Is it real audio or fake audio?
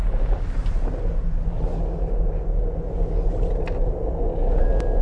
real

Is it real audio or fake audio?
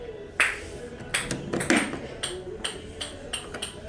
real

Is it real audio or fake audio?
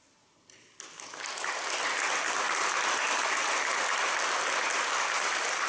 real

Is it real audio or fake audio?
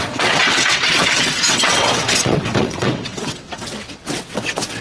fake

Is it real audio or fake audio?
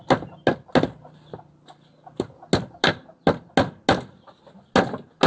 real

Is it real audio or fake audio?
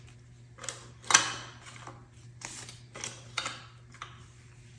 real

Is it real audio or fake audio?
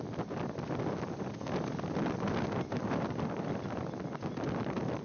real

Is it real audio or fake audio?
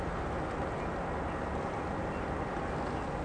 real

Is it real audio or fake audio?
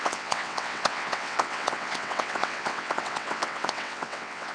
fake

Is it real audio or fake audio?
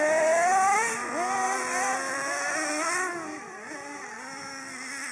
real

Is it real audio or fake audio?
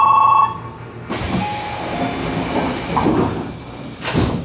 real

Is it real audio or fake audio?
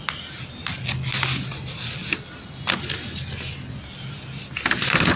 real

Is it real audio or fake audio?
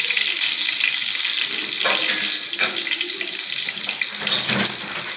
real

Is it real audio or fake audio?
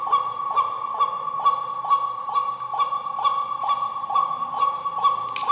real